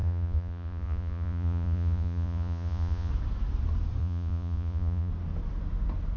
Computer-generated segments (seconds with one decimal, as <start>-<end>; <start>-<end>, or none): 0.0-3.1; 4.0-5.1